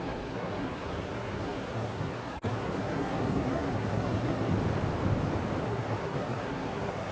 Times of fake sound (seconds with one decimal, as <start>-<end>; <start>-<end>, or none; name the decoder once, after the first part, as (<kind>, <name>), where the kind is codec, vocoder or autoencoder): 0.0-4.5 (codec, SNAC); 5.6-7.1